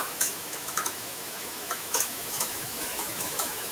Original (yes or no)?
no